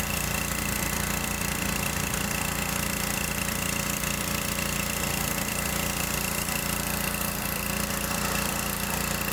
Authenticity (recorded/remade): remade